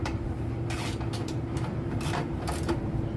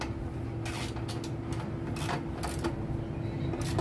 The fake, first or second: first